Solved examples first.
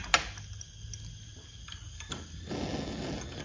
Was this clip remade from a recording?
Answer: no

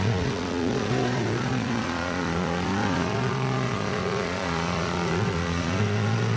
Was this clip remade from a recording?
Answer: yes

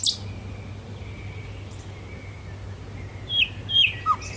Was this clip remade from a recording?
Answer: no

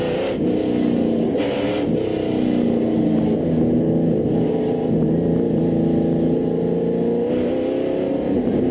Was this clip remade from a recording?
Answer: no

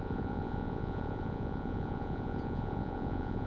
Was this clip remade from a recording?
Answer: yes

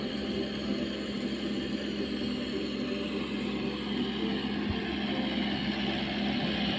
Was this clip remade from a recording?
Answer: no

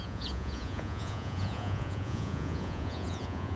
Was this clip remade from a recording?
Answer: yes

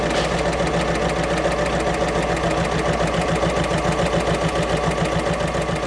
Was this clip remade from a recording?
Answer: no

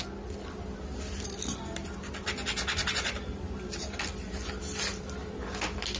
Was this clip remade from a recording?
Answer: no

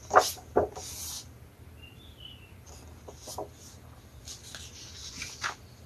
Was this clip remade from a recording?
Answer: no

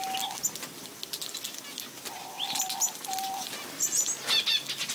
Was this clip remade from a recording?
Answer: no